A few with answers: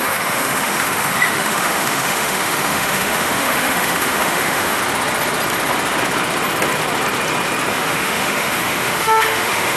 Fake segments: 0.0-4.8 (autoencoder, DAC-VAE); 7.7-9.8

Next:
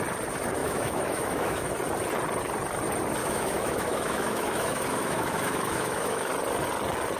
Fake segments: 0.6-1.7 (autoencoder, DAC-VAE); 3.2-6.3

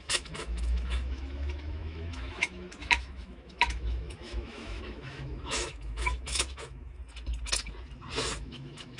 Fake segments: 0.0-7.0 (autoencoder, DAC-VAE); 8.4-9.0

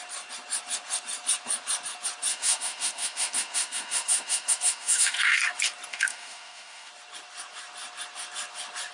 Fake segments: 2.3-5.4 (autoencoder, DAC-VAE); 5.9-6.9

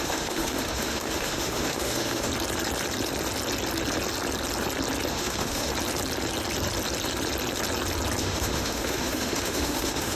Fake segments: 0.0-2.3 (autoencoder, DAC-VAE); 5.1-5.7; 8.2-10.2

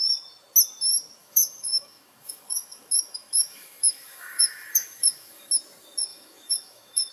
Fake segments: 1.2-5.5 (autoencoder, DAC-VAE); 6.1-7.1

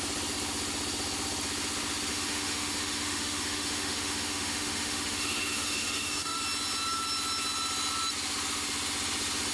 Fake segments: 2.1-6.4 (autoencoder, DAC-VAE)

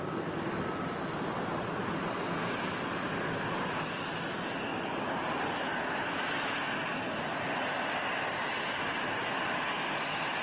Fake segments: none